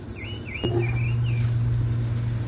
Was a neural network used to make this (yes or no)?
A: no